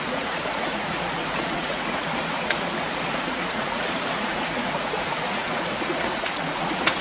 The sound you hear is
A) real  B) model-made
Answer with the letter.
B